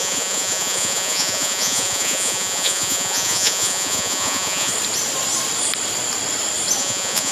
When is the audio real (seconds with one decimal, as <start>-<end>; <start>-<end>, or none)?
4.7-6.8